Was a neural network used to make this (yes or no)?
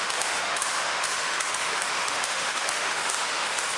yes